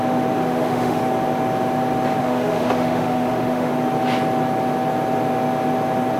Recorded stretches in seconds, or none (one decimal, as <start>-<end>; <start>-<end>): 0.0-0.4; 1.0-2.2; 3.7-6.2